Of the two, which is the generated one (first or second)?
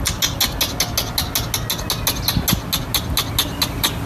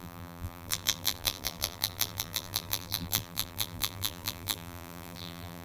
second